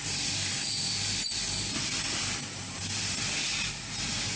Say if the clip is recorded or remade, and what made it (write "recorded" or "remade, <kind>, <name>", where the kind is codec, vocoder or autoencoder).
recorded